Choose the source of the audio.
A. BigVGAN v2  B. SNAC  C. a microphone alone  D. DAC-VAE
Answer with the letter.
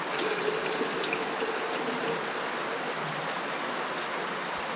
C